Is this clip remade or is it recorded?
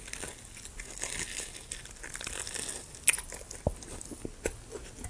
recorded